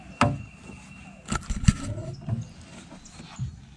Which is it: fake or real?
real